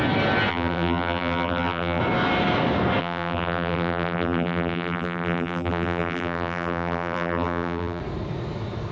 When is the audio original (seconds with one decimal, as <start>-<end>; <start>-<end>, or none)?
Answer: 0.0-0.5; 2.0-3.0; 8.0-8.9